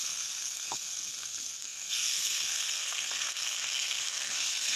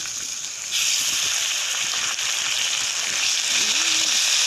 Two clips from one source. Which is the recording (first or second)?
second